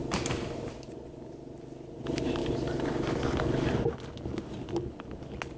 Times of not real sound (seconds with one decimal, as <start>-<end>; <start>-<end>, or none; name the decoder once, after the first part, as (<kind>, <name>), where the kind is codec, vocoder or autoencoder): none